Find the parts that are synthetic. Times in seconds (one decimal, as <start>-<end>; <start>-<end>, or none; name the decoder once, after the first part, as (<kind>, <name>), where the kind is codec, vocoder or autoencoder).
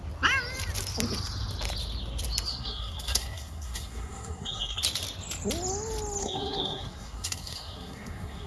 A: 2.5-4.8 (codec, SNAC); 6.2-8.5